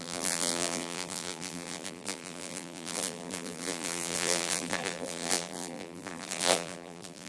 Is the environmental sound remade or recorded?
remade